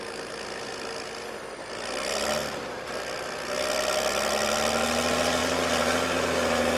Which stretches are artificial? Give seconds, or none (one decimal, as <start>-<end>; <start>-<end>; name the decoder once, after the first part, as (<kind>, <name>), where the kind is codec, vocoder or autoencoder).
none